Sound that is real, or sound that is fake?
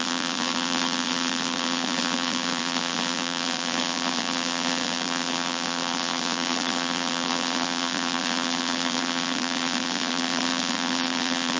fake